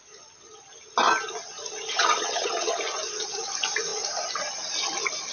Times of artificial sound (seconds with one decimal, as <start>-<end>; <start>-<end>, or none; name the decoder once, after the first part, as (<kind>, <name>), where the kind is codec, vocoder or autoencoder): 1.9-2.8 (vocoder, HiFi-GAN)

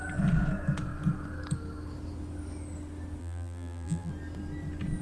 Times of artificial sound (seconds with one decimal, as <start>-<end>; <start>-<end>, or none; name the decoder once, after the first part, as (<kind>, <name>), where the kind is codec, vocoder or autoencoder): 3.2-4.1 (vocoder, BigVGAN v2)

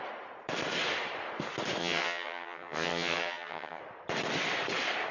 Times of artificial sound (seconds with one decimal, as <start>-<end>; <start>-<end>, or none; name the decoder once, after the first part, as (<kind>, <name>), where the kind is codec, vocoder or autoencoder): 1.8-3.8 (vocoder, HiFi-GAN)

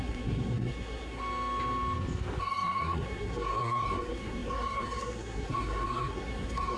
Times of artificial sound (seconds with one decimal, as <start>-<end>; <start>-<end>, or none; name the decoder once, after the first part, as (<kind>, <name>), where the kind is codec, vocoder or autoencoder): 0.0-1.2 (codec, SNAC); 2.4-6.8